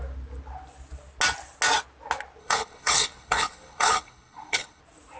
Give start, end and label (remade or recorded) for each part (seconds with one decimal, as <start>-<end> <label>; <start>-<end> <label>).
0.0-2.4 recorded; 2.4-4.8 remade; 4.8-5.2 recorded